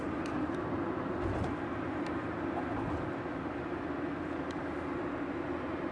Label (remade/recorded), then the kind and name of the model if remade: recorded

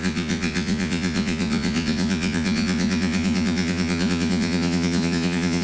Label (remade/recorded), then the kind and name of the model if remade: remade, vocoder, Vocos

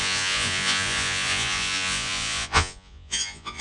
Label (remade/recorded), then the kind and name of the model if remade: remade, vocoder, Vocos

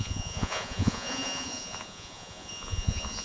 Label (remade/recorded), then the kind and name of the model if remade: remade, vocoder, Vocos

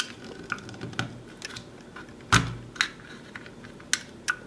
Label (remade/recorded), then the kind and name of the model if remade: recorded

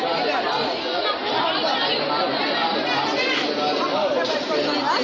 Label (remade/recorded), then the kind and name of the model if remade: recorded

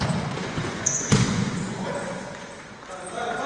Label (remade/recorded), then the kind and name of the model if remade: remade, vocoder, Vocos